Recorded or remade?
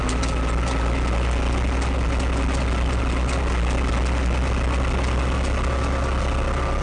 recorded